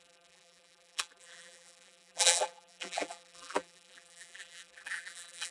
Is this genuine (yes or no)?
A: no